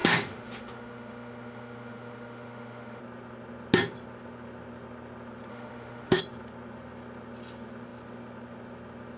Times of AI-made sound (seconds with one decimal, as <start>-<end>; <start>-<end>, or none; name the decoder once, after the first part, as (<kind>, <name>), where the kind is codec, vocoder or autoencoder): 0.0-3.0 (autoencoder, DAC-VAE); 5.5-6.2